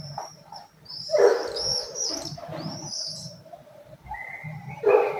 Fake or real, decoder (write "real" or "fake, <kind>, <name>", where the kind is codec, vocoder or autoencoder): fake, vocoder, BigVGAN v2